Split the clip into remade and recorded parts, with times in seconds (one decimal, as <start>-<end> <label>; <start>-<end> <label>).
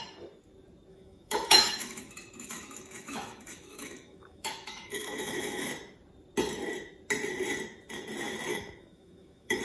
0.0-0.9 recorded; 0.9-5.7 remade; 5.7-8.5 recorded; 8.5-9.6 remade